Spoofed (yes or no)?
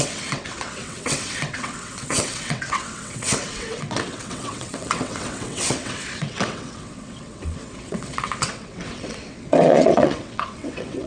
yes